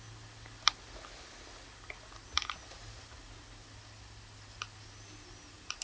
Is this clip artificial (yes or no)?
no